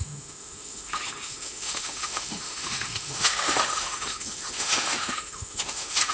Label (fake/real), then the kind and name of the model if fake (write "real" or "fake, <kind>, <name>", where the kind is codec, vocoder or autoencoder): fake, autoencoder, DAC-VAE